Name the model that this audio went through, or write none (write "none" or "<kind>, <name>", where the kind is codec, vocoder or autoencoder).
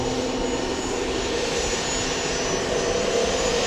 none